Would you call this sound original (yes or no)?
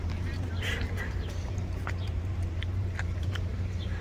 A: no